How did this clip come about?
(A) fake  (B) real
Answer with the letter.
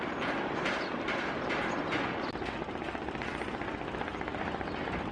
B